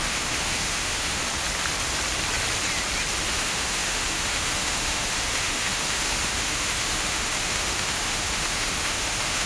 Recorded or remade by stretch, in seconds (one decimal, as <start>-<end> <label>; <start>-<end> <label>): 0.0-1.2 remade; 1.2-3.3 recorded; 3.3-9.5 remade